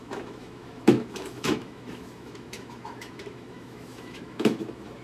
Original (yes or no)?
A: no